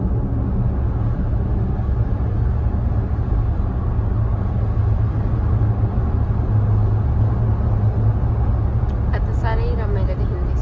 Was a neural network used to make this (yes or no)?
no